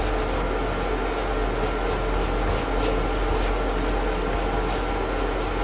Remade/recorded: recorded